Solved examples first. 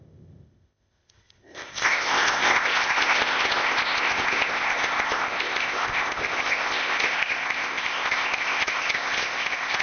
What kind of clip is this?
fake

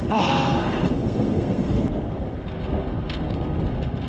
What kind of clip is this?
fake